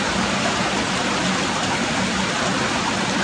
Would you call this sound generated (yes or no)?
no